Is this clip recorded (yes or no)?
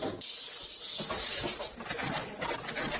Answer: yes